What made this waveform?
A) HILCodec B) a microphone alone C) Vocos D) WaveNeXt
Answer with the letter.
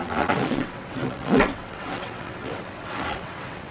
D